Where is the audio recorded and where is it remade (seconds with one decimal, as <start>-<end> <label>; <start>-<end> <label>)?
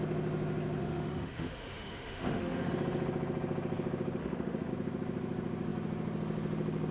0.0-0.8 recorded; 0.8-2.7 remade; 2.7-4.2 recorded; 4.2-4.7 remade; 4.7-6.9 recorded